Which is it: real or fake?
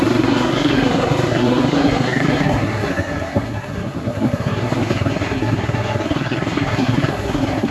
fake